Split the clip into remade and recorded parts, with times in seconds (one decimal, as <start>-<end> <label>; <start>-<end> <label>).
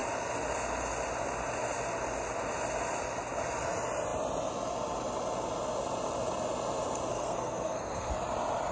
0.0-7.1 recorded; 7.1-8.1 remade; 8.1-8.7 recorded